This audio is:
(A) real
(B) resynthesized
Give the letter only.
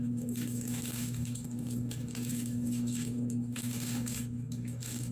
B